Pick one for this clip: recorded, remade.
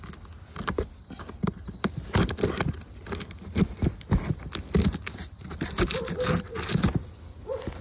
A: recorded